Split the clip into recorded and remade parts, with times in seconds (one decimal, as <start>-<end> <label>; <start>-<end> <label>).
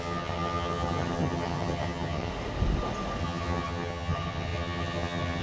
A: 0.0-2.3 remade; 2.3-3.2 recorded; 3.2-5.4 remade